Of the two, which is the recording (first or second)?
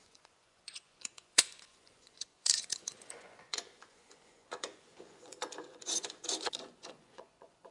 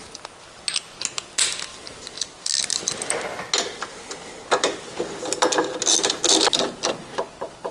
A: second